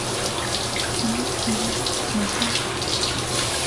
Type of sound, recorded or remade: recorded